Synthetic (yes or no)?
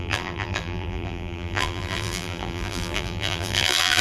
yes